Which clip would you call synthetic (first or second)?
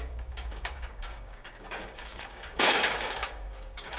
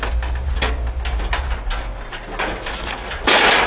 first